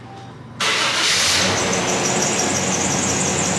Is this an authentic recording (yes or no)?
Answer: yes